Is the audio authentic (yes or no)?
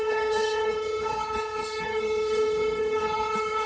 no